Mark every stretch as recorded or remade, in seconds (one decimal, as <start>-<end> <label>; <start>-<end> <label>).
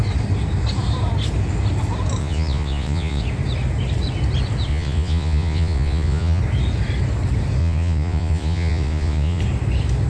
0.0-2.2 recorded; 2.2-3.2 remade; 3.2-4.7 recorded; 4.7-6.4 remade; 6.4-7.6 recorded; 7.6-9.4 remade; 9.4-10.1 recorded